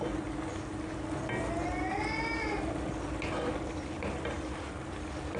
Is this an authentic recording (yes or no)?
yes